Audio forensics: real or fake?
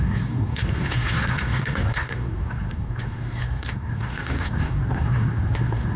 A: fake